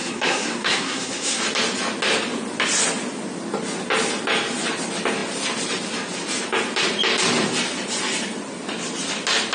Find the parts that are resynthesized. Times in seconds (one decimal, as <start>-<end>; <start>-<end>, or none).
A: 0.0-1.4